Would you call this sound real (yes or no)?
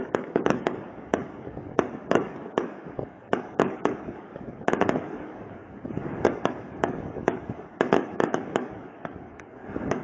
no